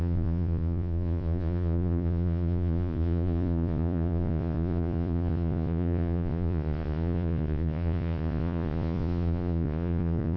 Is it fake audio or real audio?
fake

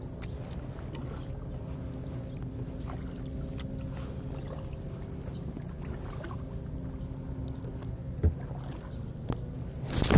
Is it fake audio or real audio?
real